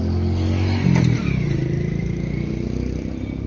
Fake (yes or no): no